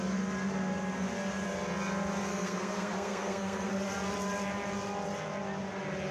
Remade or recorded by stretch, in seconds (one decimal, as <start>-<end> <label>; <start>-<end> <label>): 0.0-2.3 recorded; 2.3-3.7 remade; 3.7-6.1 recorded